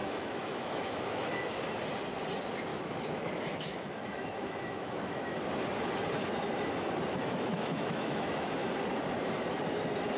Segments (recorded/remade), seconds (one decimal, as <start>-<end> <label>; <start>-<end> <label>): 0.0-1.6 remade; 1.6-2.7 recorded; 2.7-5.4 remade; 5.4-7.2 recorded; 7.2-8.5 remade; 8.5-10.2 recorded